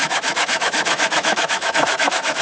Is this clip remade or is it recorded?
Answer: remade